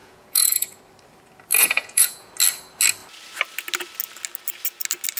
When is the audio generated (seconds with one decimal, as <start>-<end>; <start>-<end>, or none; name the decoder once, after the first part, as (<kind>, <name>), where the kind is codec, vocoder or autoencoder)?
0.0-0.8 (vocoder, Vocos); 1.5-2.3